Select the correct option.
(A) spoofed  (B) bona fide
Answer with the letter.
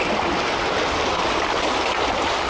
B